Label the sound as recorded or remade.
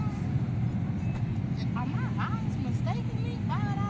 recorded